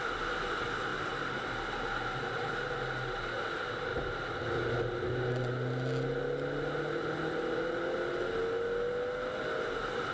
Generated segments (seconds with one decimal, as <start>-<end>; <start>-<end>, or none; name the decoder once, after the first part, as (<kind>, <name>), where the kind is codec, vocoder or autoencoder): none